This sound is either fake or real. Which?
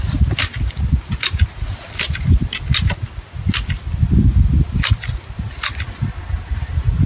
real